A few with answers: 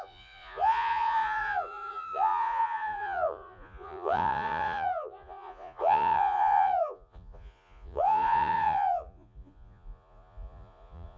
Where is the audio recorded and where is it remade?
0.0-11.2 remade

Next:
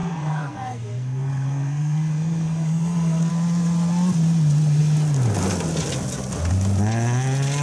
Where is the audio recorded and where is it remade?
0.0-3.3 remade; 3.3-7.6 recorded

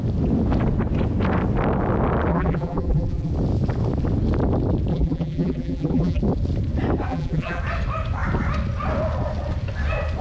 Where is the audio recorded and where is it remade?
0.0-2.3 recorded; 2.3-3.3 remade; 3.3-4.9 recorded; 4.9-6.2 remade; 6.2-7.1 recorded; 7.1-7.6 remade; 7.6-10.2 recorded